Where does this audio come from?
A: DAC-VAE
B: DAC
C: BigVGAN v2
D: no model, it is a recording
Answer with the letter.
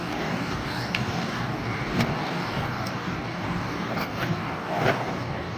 B